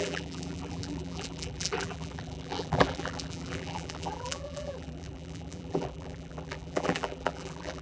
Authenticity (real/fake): fake